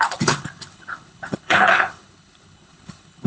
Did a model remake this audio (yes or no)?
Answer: yes